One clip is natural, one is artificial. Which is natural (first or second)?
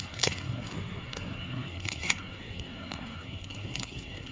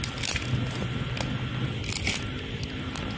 second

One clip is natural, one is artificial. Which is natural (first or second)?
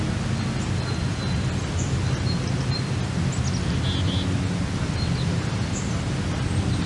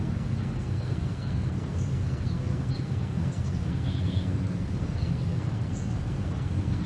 first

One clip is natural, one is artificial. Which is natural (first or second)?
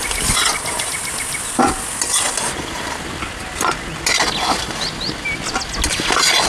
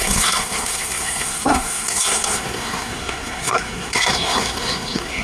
first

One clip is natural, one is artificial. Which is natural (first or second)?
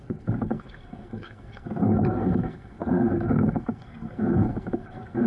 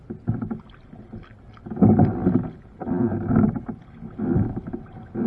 second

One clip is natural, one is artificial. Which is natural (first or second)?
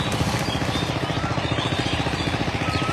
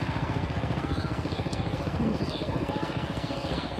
first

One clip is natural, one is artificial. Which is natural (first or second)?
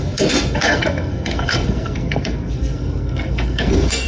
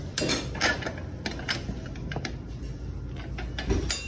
second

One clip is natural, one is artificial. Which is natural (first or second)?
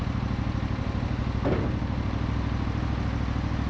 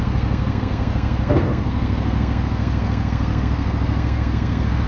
first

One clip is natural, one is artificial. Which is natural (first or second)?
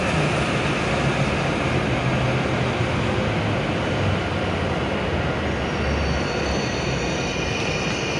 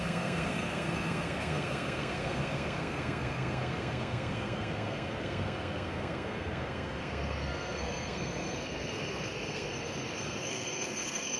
first